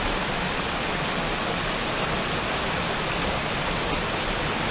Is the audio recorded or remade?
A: recorded